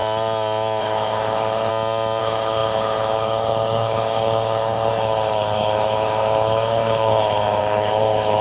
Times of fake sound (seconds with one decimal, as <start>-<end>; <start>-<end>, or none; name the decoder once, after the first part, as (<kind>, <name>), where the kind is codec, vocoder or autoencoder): 0.8-1.7 (codec, HILCodec); 2.2-8.4